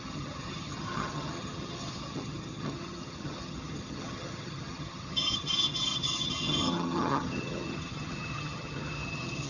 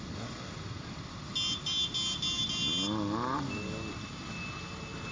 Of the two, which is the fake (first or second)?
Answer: first